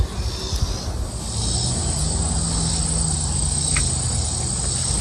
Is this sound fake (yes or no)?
no